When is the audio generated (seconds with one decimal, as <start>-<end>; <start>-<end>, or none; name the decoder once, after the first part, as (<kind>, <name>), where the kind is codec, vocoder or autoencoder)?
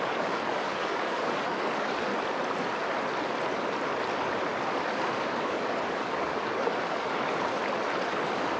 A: 0.0-2.1 (codec, DAC); 4.8-7.6; 8.1-8.6